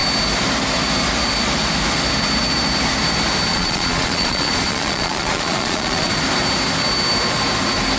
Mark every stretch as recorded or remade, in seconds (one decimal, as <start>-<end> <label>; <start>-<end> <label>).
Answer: 0.0-3.5 recorded; 3.5-6.1 remade; 6.1-8.0 recorded